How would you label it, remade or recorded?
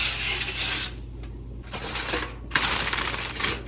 recorded